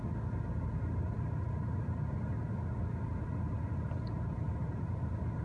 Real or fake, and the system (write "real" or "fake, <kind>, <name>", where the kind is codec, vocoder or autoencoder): real